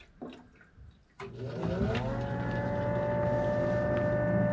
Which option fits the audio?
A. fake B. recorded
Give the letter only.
B